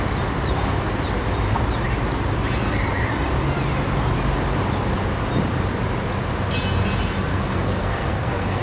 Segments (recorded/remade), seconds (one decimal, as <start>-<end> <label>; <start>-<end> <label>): 0.0-7.3 recorded; 7.3-8.6 remade